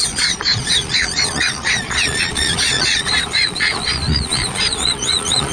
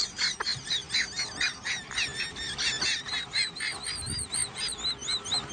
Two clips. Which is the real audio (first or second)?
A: second